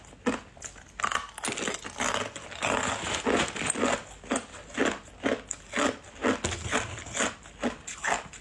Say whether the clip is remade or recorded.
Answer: recorded